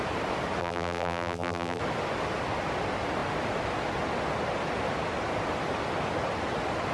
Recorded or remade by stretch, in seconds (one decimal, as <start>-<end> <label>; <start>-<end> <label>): 0.0-0.6 recorded; 0.6-1.8 remade; 1.8-6.9 recorded